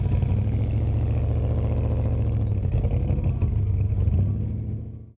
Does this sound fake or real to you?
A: real